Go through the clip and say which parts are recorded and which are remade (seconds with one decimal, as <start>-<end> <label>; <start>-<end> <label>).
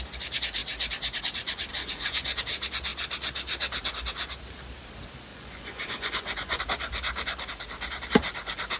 0.0-1.7 recorded; 1.7-2.4 remade; 2.4-5.3 recorded; 5.3-6.6 remade; 6.6-8.8 recorded